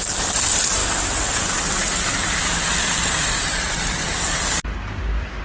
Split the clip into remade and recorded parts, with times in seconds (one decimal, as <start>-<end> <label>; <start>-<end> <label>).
0.0-4.7 recorded; 4.7-5.4 remade